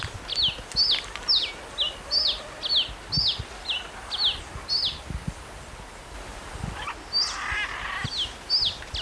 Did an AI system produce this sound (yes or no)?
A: no